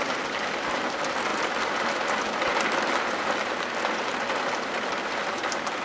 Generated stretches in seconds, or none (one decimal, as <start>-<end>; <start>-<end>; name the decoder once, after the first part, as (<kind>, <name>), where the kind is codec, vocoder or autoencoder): none